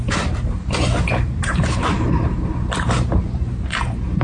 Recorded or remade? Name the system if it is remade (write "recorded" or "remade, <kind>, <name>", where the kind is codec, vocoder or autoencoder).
remade, vocoder, BigVGAN v2